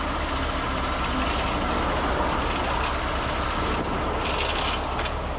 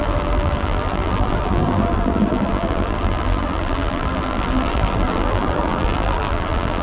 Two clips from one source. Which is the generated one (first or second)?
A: second